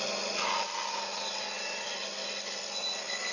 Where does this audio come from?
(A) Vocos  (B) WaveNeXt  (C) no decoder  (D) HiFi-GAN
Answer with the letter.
C